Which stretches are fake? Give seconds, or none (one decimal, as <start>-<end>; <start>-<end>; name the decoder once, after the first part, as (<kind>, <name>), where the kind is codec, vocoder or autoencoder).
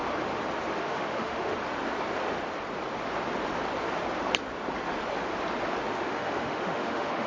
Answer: 0.8-1.5 (autoencoder, DAC-VAE); 5.9-7.3